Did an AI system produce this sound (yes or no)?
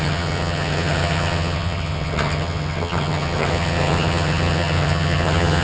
yes